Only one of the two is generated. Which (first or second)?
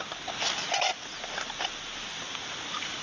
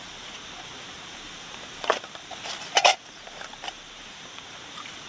second